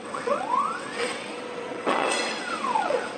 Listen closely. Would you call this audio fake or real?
fake